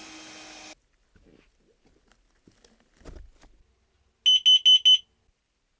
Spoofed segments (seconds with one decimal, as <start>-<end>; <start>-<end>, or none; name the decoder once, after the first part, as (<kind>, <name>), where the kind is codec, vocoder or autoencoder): none